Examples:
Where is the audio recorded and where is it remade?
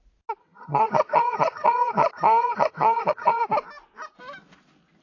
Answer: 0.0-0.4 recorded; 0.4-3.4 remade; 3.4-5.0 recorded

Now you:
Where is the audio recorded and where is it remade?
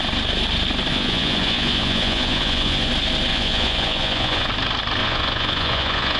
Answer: 0.0-0.9 recorded; 0.9-2.9 remade; 2.9-3.3 recorded; 3.3-4.5 remade; 4.5-5.0 recorded; 5.0-6.2 remade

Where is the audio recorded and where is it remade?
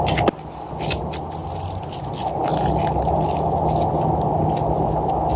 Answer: 0.0-5.4 recorded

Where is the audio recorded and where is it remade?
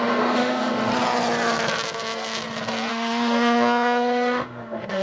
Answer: 0.0-0.9 remade; 0.9-2.9 recorded; 2.9-5.0 remade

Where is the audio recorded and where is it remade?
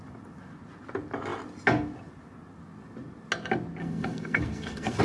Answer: 0.0-3.8 recorded; 3.8-5.0 remade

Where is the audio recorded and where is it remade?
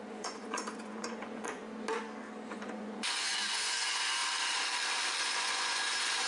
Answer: 0.0-1.6 remade; 1.6-2.5 recorded; 2.5-4.2 remade; 4.2-5.2 recorded; 5.2-6.3 remade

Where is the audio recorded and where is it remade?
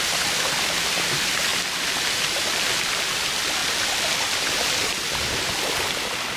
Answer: 0.0-1.5 remade; 1.5-2.2 recorded; 2.2-6.4 remade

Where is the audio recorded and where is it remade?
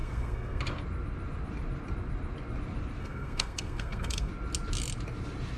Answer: 0.0-0.6 remade; 0.6-3.0 recorded; 3.0-4.3 remade; 4.3-5.6 recorded